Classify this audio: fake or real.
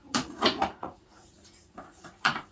fake